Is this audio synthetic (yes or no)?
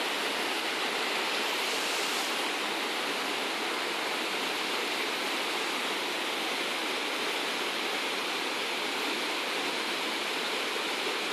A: no